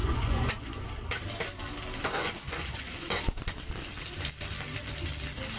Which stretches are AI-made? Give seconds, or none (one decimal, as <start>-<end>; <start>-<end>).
0.0-0.9; 2.0-3.2